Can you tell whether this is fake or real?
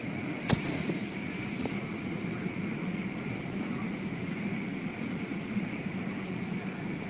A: fake